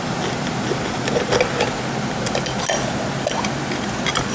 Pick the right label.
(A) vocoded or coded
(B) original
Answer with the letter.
B